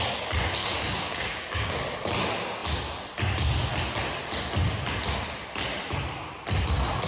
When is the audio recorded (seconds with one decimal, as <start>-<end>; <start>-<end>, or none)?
0.0-0.6; 1.8-7.1